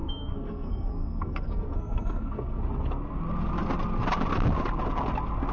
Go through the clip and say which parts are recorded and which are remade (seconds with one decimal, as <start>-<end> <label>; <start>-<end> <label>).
0.0-2.6 remade; 2.6-5.5 recorded